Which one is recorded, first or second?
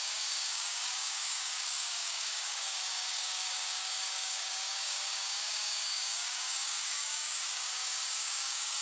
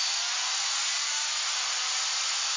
second